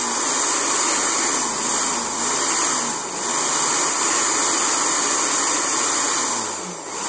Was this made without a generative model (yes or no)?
yes